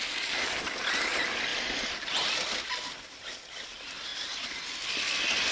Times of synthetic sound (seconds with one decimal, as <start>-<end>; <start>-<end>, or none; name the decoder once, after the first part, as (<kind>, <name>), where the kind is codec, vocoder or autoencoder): none